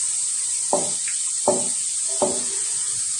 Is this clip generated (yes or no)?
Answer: no